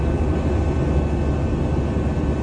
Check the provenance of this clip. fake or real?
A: real